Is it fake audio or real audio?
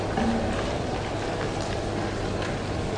real